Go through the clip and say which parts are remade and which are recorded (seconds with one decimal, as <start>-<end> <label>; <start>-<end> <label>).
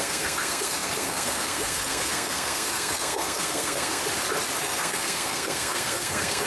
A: 0.0-4.0 remade; 4.0-4.6 recorded; 4.6-6.5 remade